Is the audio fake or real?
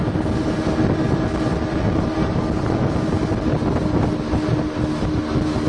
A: real